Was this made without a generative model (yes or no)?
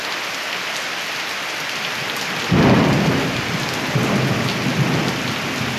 yes